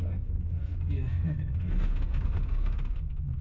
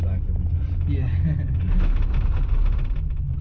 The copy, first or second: first